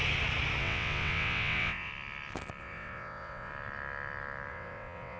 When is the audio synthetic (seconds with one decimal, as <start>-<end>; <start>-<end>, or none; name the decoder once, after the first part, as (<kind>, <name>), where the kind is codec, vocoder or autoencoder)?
0.6-1.9 (vocoder, WaveNeXt); 2.6-3.5; 4.5-5.2